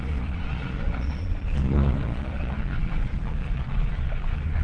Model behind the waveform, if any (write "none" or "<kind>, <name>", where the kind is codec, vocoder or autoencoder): vocoder, Vocos